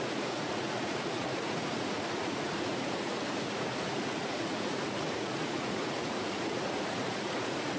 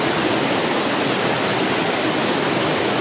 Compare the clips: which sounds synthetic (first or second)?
first